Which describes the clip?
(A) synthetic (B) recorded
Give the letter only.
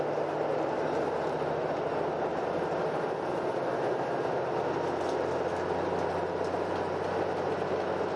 B